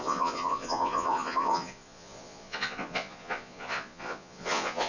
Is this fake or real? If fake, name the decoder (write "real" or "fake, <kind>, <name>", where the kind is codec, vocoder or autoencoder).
fake, vocoder, Vocos